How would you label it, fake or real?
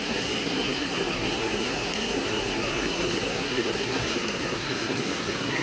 fake